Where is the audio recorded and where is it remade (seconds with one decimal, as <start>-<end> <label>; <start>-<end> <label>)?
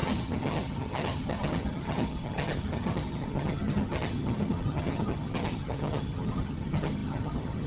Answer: 0.0-7.7 remade